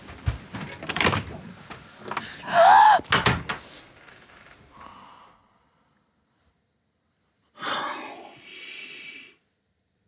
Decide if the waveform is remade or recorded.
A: recorded